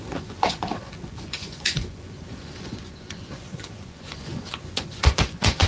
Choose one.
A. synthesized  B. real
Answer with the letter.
A